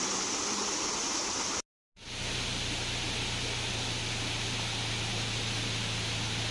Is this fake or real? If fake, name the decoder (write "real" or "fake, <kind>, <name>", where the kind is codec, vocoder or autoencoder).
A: real